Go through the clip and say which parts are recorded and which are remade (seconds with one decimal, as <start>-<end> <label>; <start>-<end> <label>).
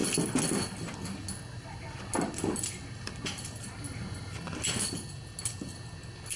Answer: 0.0-6.4 recorded